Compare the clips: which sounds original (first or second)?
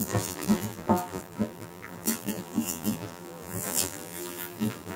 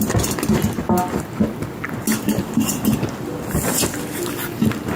second